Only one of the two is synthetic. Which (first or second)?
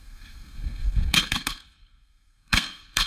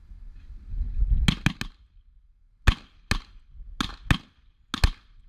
first